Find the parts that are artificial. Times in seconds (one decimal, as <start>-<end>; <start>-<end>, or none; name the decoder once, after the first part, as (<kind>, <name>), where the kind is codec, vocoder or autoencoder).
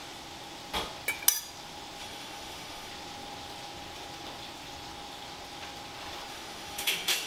2.0-2.9 (autoencoder, DAC-VAE); 6.3-7.3